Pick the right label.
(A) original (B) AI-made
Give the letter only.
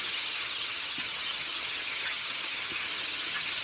B